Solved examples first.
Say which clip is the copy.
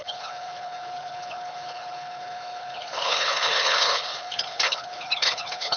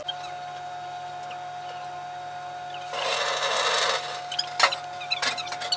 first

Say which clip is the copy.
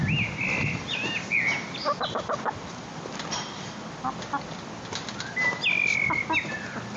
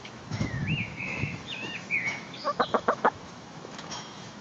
second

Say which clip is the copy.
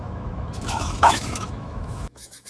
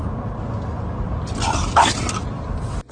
first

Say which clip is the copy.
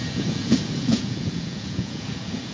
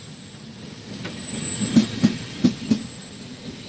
first